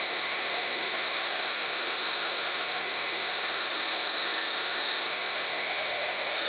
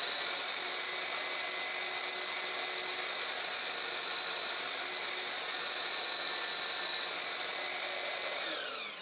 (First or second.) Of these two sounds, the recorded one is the second